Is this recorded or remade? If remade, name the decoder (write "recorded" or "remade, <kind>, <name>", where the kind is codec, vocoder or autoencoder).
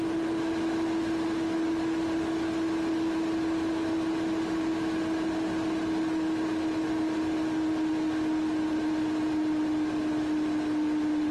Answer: recorded